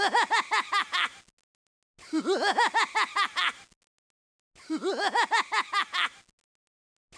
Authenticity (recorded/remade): recorded